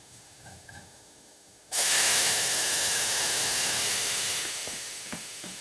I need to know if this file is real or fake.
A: fake